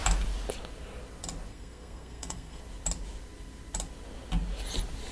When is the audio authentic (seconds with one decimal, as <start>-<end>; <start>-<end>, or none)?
0.0-1.5; 2.6-5.1